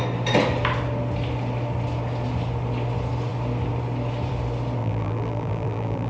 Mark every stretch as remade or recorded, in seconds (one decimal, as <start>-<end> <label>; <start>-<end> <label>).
0.0-4.8 recorded; 4.8-6.1 remade